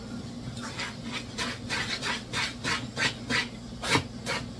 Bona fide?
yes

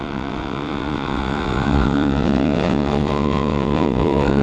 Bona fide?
no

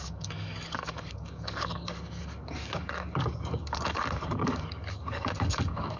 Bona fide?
no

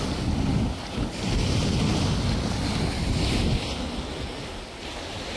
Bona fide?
yes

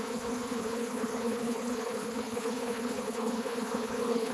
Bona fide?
no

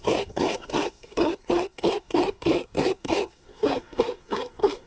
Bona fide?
no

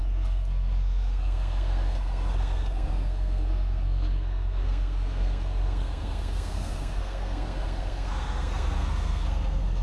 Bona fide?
no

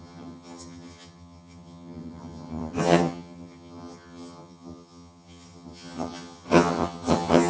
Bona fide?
no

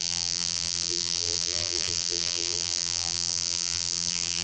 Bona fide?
no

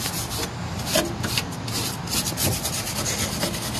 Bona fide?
yes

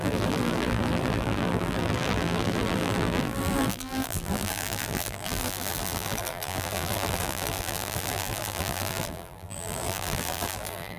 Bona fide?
no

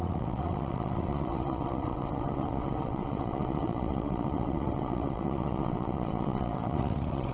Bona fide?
no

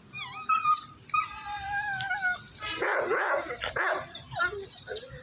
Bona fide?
yes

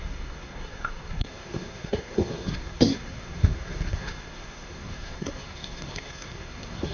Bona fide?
no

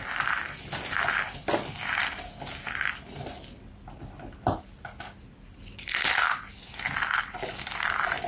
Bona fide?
yes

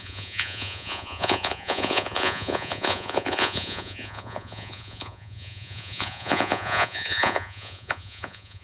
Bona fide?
no